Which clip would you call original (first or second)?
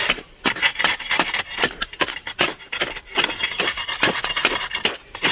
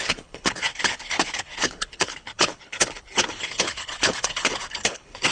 first